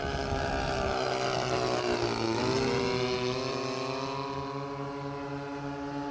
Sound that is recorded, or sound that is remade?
recorded